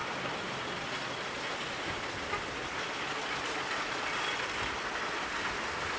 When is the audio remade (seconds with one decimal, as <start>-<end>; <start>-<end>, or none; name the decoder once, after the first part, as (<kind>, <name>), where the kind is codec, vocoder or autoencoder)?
none